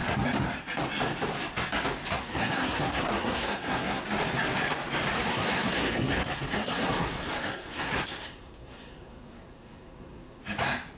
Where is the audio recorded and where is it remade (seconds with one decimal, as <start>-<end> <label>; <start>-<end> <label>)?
0.0-2.2 recorded; 2.2-4.0 remade; 4.0-5.3 recorded; 5.3-10.4 remade; 10.4-11.0 recorded